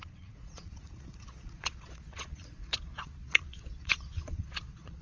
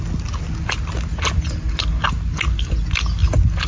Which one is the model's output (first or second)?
first